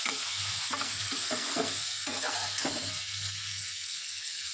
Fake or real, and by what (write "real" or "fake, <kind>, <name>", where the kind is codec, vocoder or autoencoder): fake, codec, SNAC